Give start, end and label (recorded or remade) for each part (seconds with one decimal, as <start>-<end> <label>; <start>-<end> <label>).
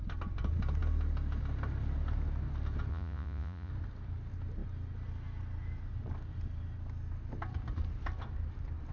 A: 0.0-2.9 recorded; 2.9-3.7 remade; 3.7-8.9 recorded